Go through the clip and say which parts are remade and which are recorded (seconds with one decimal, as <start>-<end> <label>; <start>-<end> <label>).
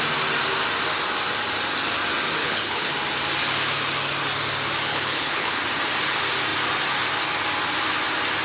0.0-2.4 recorded; 2.4-2.9 remade; 2.9-4.9 recorded; 4.9-5.6 remade; 5.6-8.4 recorded